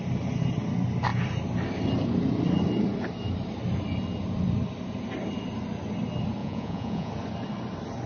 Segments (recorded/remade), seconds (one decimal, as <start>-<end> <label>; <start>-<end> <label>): 0.0-6.4 recorded; 6.4-7.1 remade; 7.1-8.1 recorded